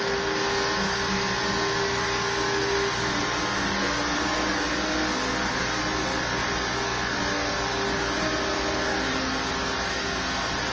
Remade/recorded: recorded